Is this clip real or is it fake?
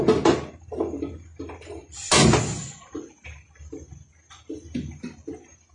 real